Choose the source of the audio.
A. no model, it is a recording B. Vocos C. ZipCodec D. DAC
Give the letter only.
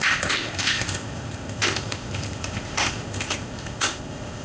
C